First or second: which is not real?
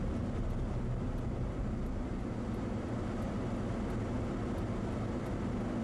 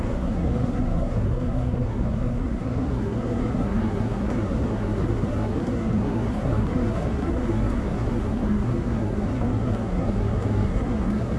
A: second